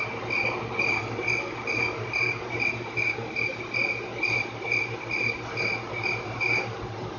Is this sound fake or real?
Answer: real